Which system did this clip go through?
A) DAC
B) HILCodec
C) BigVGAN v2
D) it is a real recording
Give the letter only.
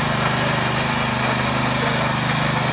D